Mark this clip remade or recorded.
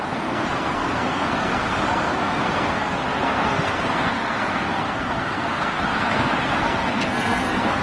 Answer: remade